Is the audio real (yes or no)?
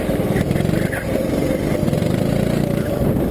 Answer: yes